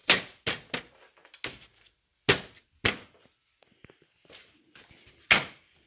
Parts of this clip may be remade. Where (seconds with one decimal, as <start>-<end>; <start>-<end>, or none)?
none